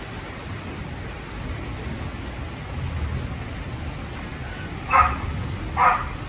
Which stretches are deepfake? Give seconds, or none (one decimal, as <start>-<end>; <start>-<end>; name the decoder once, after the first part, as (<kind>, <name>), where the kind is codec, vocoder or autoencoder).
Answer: none